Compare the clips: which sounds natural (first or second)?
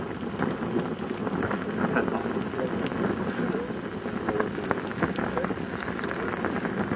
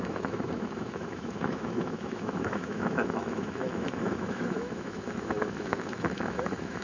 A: first